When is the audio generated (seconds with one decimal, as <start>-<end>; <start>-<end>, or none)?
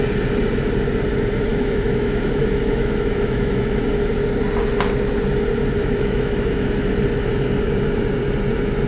1.5-4.1; 5.8-6.8